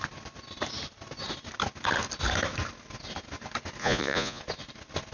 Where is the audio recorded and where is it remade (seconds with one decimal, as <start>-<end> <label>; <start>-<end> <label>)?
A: 0.0-3.8 recorded; 3.8-4.4 remade; 4.4-5.1 recorded